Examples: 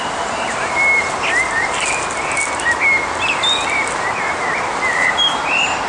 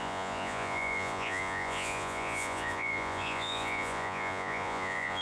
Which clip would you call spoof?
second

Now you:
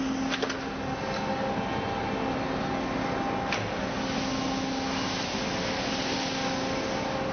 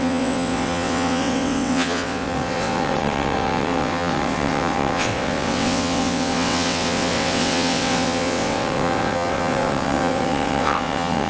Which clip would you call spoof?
second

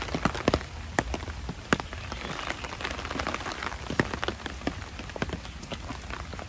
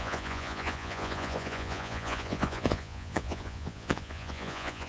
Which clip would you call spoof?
second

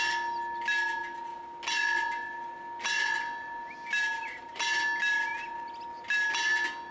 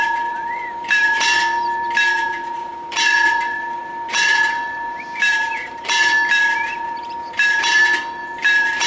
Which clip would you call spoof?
second